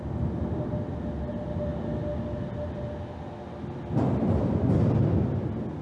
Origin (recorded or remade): recorded